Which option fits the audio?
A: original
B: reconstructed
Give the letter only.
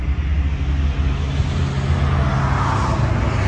A